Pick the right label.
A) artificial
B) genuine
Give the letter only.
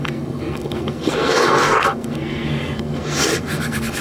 A